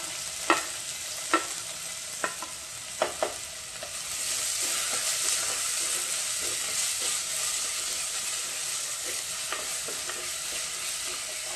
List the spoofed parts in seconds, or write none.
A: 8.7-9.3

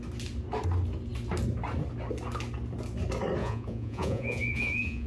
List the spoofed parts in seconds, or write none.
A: 3.4-5.1

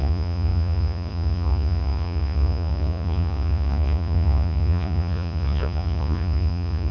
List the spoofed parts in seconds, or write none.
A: 0.0-6.9

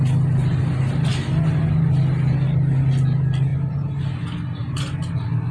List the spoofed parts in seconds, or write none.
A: 3.5-4.0; 4.6-5.5